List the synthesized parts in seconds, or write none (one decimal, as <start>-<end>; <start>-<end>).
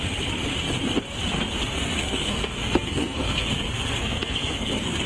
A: 1.6-5.1